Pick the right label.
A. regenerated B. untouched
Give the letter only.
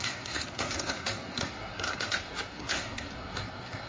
A